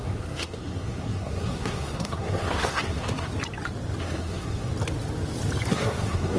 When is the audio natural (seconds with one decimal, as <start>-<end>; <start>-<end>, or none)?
3.3-4.0; 4.7-5.7